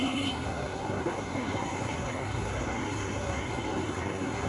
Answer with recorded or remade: remade